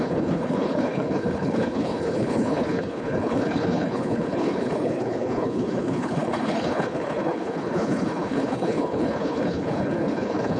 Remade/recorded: remade